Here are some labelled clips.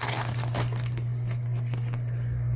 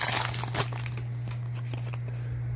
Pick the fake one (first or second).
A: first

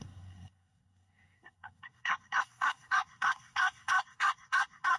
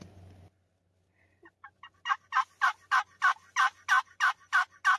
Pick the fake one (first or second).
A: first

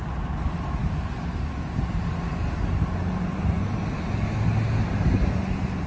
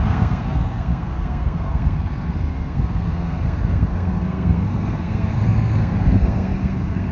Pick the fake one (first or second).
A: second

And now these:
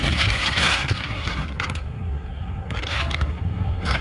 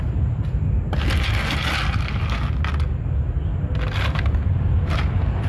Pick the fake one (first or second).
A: first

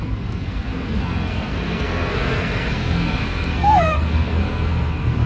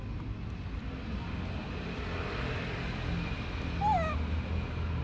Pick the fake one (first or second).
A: first